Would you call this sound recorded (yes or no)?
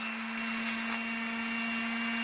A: yes